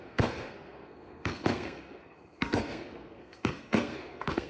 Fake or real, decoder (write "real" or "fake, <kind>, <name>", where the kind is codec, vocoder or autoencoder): fake, codec, SNAC